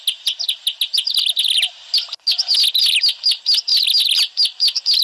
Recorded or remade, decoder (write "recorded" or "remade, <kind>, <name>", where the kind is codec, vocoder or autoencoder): recorded